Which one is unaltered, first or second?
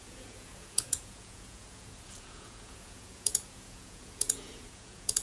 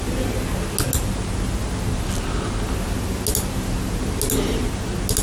second